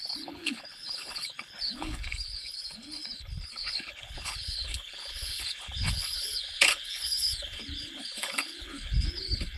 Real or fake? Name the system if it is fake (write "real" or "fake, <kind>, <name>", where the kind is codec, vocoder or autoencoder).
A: fake, codec, HILCodec